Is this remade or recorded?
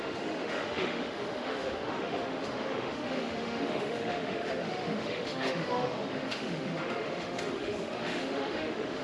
remade